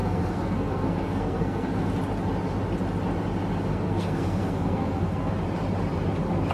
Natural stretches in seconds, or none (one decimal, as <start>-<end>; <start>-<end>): 1.9-3.7; 5.3-6.5